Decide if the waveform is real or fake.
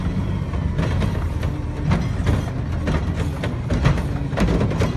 real